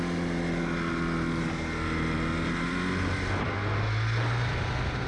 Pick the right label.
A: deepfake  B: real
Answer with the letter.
B